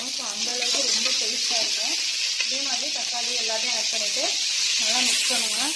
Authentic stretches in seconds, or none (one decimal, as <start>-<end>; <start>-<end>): 0.0-5.8